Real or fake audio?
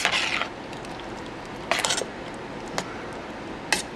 real